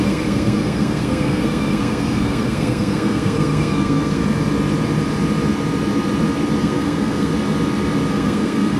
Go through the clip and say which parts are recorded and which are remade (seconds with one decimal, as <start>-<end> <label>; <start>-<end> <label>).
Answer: 0.0-4.2 remade; 4.2-6.6 recorded; 6.6-7.3 remade; 7.3-8.1 recorded; 8.1-8.8 remade